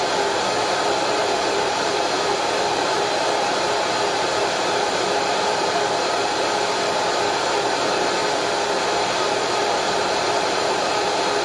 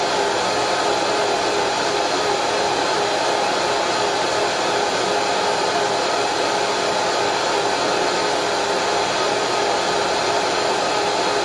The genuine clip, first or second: second